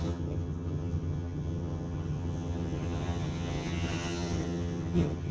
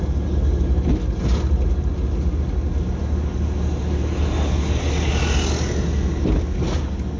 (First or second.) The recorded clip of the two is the second